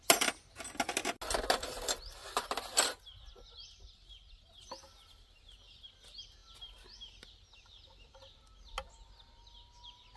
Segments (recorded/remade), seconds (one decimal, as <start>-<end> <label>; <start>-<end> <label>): 0.0-10.2 recorded